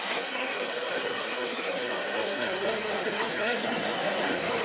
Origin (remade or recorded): remade